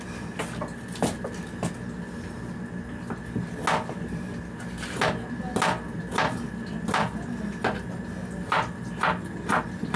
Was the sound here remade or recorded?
recorded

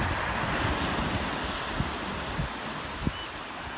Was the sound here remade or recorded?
recorded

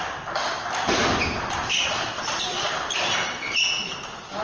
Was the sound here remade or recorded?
recorded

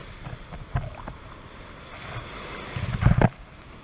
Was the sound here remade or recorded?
recorded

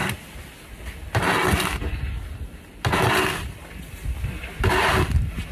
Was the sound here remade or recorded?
recorded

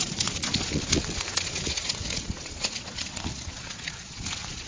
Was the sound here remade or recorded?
remade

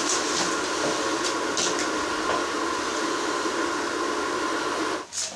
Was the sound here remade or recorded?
recorded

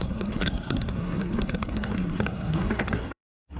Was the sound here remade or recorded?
remade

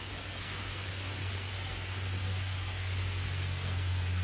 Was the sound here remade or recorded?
remade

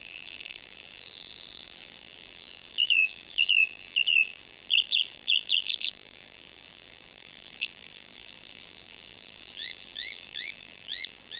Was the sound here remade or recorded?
remade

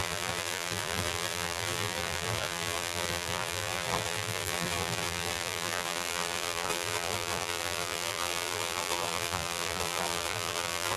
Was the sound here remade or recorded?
remade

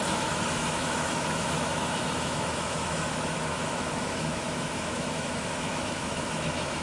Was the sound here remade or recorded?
remade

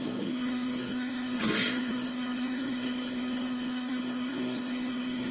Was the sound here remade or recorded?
remade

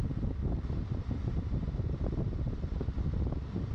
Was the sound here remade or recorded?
recorded